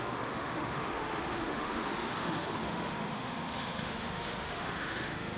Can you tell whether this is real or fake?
fake